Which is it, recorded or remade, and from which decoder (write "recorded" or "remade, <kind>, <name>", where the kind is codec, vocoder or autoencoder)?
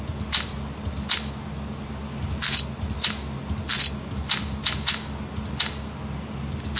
recorded